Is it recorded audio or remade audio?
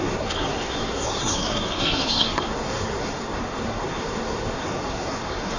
remade